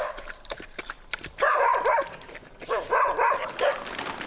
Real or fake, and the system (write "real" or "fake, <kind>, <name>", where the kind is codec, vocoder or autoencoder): fake, vocoder, BigVGAN v2